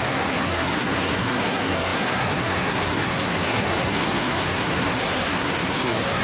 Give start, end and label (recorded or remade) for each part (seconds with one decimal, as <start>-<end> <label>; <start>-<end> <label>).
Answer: 0.0-6.2 remade